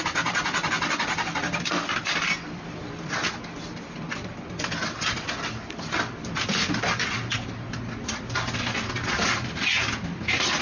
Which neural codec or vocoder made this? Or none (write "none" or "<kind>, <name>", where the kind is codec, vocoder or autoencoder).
none